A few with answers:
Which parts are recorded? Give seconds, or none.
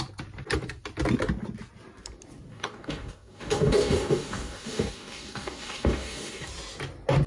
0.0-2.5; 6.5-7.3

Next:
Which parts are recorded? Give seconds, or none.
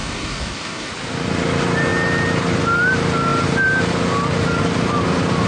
0.9-5.5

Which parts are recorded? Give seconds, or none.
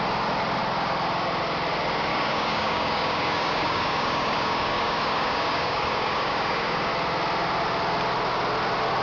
0.0-2.1; 6.9-9.0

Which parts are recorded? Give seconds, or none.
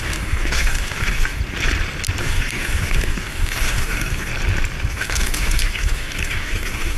1.4-2.2; 4.3-4.9